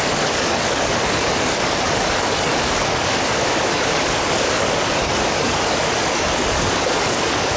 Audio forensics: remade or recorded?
remade